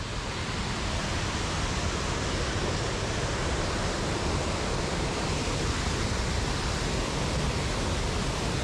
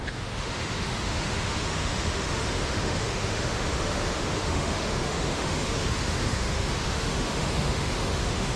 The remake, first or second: second